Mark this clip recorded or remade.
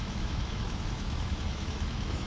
remade